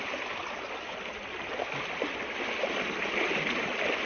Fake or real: real